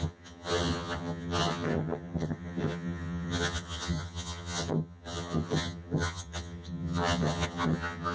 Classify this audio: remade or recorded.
remade